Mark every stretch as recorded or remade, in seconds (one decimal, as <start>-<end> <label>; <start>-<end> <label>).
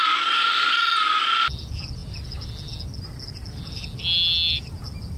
0.0-5.2 recorded